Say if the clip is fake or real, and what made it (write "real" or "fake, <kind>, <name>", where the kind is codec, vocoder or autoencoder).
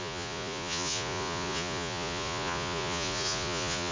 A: fake, vocoder, Vocos